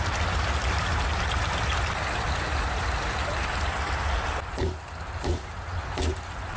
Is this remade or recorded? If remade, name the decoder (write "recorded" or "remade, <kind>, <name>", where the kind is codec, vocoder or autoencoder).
recorded